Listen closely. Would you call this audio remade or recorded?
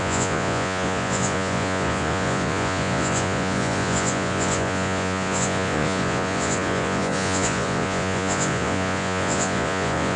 remade